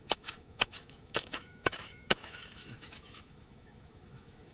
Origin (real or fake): fake